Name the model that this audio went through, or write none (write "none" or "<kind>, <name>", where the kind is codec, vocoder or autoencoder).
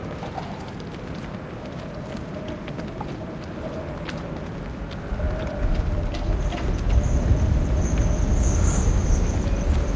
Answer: none